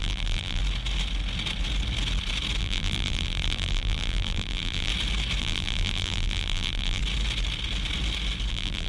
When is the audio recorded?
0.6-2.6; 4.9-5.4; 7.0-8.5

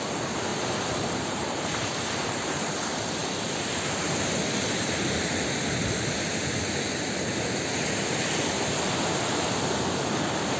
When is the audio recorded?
0.0-0.5; 2.7-3.2; 5.2-10.6

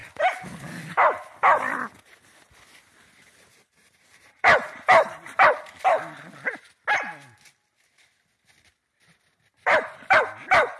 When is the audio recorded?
0.0-3.5; 5.6-10.8

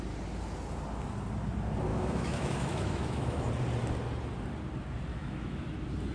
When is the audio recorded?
0.0-1.9; 3.5-5.1; 5.6-6.1